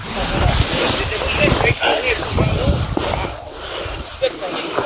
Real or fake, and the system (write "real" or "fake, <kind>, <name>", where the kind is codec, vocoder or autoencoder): fake, vocoder, BigVGAN v2